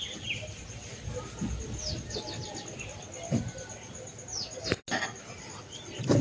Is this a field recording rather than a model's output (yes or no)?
yes